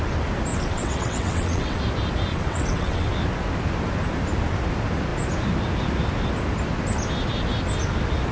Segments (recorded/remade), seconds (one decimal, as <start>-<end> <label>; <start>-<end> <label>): 0.0-0.5 recorded; 0.5-1.8 remade; 1.8-2.3 recorded; 2.3-3.1 remade; 3.1-8.3 recorded